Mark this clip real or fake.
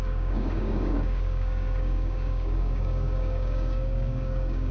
fake